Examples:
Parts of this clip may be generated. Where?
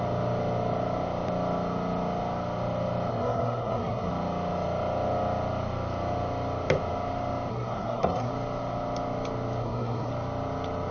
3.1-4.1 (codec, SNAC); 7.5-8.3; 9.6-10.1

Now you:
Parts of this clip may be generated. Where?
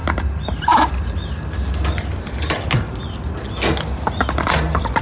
none